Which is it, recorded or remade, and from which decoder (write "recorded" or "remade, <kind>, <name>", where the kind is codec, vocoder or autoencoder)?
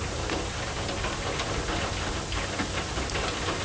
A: recorded